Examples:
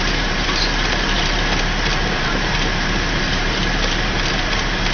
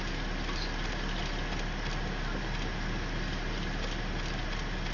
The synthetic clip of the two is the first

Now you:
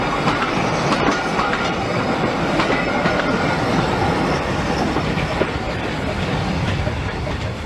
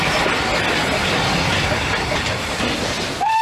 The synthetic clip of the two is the first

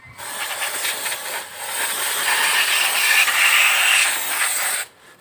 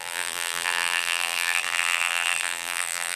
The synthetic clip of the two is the second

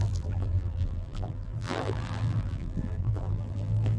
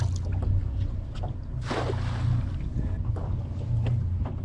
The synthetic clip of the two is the first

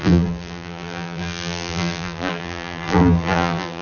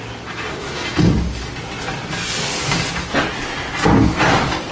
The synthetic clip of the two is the first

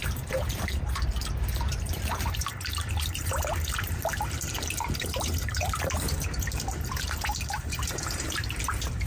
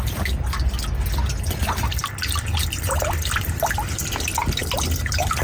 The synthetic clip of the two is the first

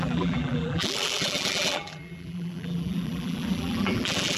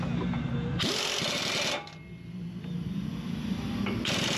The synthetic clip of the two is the first